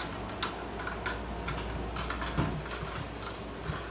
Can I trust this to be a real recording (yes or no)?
yes